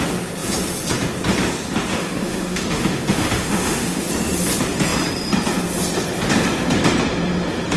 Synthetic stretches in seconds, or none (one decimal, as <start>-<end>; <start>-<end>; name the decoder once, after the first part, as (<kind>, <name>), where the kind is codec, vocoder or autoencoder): 1.9-4.1 (autoencoder, DAC-VAE)